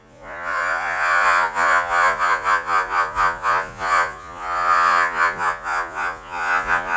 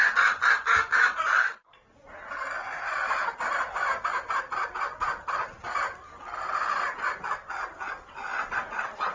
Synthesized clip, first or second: first